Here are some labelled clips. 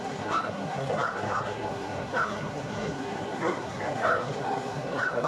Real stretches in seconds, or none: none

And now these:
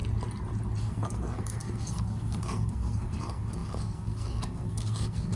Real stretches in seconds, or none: 0.0-0.8

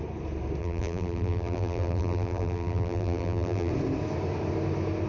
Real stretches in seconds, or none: 0.0-0.6; 3.7-5.1

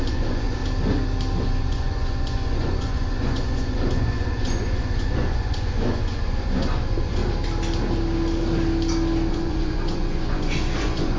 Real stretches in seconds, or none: 0.6-1.4; 7.2-9.3

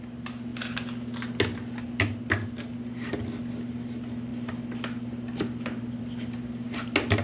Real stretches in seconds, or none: 0.0-7.2

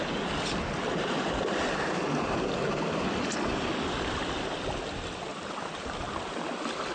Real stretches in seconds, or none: 0.0-5.3

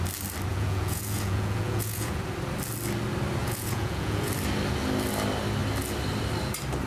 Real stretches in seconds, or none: 0.0-0.5; 2.2-3.4; 4.3-6.9